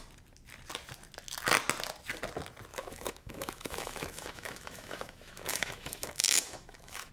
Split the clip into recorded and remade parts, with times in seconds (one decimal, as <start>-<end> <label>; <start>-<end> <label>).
0.0-2.7 recorded; 2.7-7.1 remade